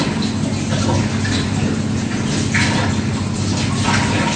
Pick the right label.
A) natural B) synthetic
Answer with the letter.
A